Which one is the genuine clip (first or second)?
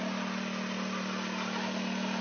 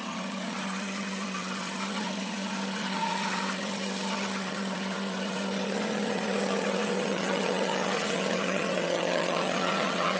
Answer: first